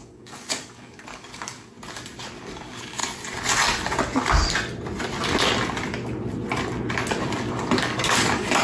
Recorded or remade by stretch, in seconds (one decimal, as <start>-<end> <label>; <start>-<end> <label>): 0.0-1.7 remade; 1.7-2.4 recorded; 2.4-3.0 remade; 3.0-7.5 recorded; 7.5-8.6 remade

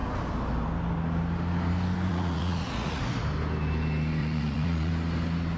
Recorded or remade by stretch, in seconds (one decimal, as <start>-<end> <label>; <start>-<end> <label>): 0.0-2.1 recorded; 2.1-3.0 remade; 3.0-4.2 recorded; 4.2-4.9 remade; 4.9-5.6 recorded

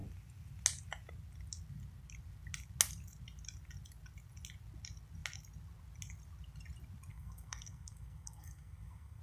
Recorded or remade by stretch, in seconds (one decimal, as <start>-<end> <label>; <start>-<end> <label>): 0.0-7.1 recorded; 7.1-9.2 remade

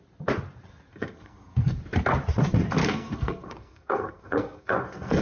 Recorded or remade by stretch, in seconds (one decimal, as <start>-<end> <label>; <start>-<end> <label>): 0.0-0.9 recorded; 0.9-1.8 remade; 1.8-2.8 recorded; 2.8-5.2 remade

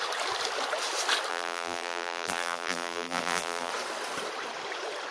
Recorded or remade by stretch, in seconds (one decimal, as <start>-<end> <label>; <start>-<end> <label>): 0.0-1.3 recorded; 1.3-3.7 remade; 3.7-5.1 recorded

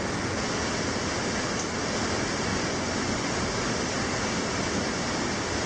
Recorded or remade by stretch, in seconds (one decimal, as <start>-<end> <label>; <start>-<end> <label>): 0.0-2.5 recorded; 2.5-3.3 remade; 3.3-5.7 recorded

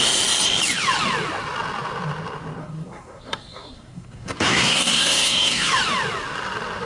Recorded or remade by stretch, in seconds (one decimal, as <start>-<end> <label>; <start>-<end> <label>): 0.0-2.6 recorded; 2.6-5.7 remade; 5.7-6.9 recorded

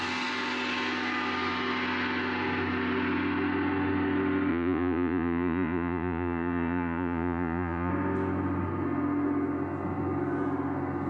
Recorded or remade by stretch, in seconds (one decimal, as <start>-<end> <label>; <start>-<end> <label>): 0.0-4.5 recorded; 4.5-7.9 remade; 7.9-11.1 recorded